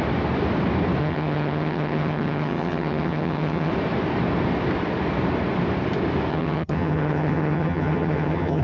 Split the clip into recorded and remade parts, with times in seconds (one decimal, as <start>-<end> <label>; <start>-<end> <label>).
0.0-1.0 recorded; 1.0-3.7 remade; 3.7-6.3 recorded; 6.3-8.6 remade